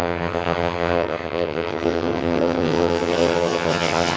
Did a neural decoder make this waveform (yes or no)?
yes